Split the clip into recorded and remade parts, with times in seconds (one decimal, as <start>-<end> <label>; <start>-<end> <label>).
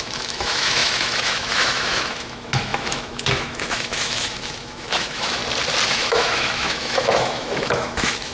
0.0-5.4 remade; 5.4-5.9 recorded; 5.9-8.3 remade